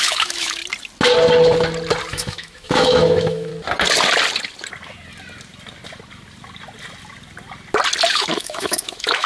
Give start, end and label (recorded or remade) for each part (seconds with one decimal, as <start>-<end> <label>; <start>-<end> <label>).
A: 0.0-0.6 remade; 0.6-2.1 recorded; 2.1-3.5 remade; 3.5-8.1 recorded; 8.1-9.3 remade